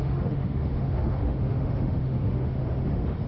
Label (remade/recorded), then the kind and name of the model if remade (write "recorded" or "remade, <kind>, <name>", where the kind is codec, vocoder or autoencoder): remade, autoencoder, DAC-VAE